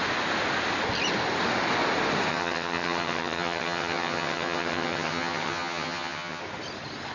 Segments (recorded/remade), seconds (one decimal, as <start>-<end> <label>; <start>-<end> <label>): 0.0-2.3 recorded; 2.3-6.4 remade; 6.4-7.1 recorded